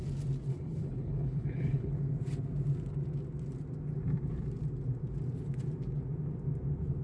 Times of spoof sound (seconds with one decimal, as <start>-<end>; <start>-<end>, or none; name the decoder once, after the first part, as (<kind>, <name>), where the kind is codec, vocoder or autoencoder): 0.5-1.9 (codec, HILCodec)